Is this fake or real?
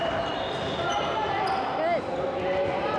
real